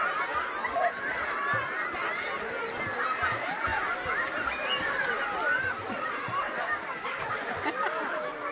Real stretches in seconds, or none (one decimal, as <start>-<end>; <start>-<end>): 0.0-8.5